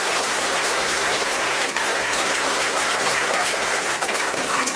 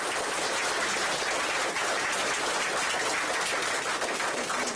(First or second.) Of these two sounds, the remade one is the first